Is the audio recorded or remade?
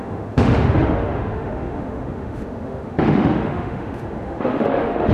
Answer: remade